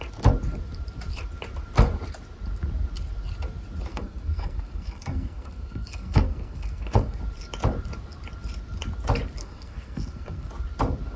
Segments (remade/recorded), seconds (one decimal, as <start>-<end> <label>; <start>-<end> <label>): 0.0-3.9 recorded; 3.9-7.2 remade; 7.2-9.4 recorded; 9.4-10.5 remade; 10.5-11.2 recorded